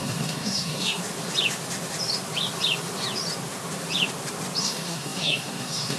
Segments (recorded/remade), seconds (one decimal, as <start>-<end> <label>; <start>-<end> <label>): 0.0-1.0 remade; 1.0-4.6 recorded; 4.6-6.0 remade